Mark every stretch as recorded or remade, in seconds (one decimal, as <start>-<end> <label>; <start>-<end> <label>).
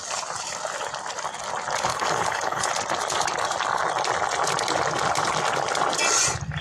0.0-1.9 recorded; 1.9-2.7 remade; 2.7-6.6 recorded